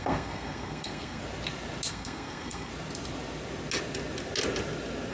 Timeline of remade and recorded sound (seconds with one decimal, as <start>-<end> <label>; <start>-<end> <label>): 0.0-1.2 remade; 1.2-1.9 recorded; 1.9-2.7 remade; 2.7-5.1 recorded